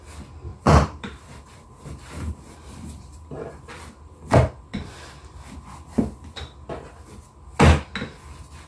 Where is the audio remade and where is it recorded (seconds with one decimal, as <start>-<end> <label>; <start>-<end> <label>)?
0.0-0.5 recorded; 0.5-3.6 remade; 3.6-8.7 recorded